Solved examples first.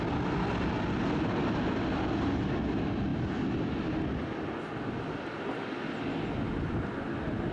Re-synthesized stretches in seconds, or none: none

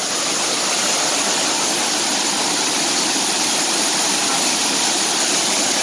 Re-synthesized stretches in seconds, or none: none

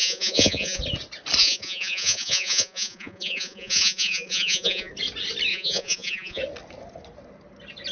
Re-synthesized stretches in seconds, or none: 0.0-0.8 (vocoder, Vocos); 1.4-4.9; 5.5-6.4

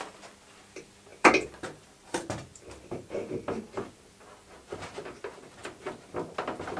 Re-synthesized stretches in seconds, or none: 1.1-2.1 (vocoder, BigVGAN v2)